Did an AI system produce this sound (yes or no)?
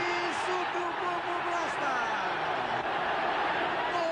no